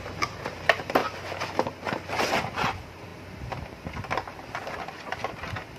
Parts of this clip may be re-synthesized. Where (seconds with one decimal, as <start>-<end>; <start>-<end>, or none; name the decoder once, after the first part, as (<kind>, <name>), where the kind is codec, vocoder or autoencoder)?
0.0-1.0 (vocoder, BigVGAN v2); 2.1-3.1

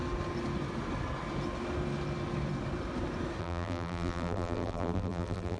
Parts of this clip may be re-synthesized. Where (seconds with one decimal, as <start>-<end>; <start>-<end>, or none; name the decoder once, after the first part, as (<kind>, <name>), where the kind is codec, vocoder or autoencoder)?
3.4-5.6 (vocoder, BigVGAN v2)

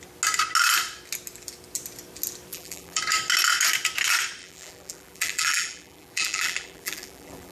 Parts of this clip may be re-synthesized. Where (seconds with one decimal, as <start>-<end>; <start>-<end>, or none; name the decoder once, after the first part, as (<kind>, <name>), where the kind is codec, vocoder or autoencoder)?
2.5-3.0 (vocoder, BigVGAN v2); 4.4-7.5

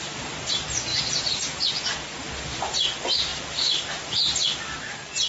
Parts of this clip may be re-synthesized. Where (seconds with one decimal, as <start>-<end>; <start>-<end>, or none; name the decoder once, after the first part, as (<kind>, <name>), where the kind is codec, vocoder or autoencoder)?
none

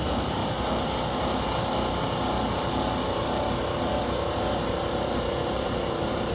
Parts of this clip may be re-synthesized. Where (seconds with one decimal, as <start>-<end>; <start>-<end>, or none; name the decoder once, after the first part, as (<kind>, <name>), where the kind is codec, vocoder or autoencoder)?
0.0-0.4 (vocoder, BigVGAN v2); 2.7-6.3

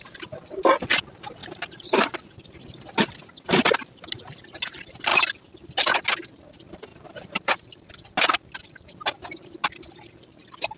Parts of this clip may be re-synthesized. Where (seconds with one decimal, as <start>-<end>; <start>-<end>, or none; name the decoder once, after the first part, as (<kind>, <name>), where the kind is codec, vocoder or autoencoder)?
1.4-2.6 (vocoder, BigVGAN v2); 6.9-7.9

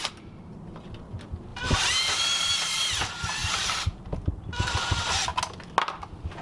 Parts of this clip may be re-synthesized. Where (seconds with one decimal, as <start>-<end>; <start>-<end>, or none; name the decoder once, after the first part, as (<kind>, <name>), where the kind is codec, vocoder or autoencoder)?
1.5-3.0 (vocoder, BigVGAN v2); 3.4-4.2